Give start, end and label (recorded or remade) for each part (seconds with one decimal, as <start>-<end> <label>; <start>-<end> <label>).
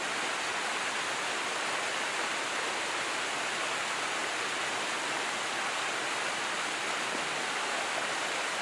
0.0-8.6 recorded